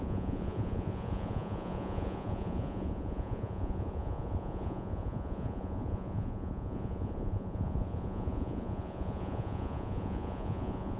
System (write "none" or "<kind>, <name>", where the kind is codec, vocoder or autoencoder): vocoder, Vocos